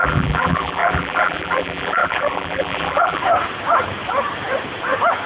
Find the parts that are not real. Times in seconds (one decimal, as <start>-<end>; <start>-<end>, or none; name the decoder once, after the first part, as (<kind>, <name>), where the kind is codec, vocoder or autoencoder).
0.0-3.2 (vocoder, BigVGAN v2)